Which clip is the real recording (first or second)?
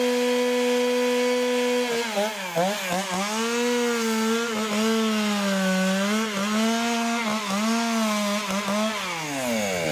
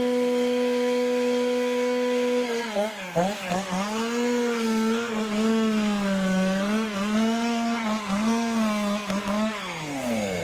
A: first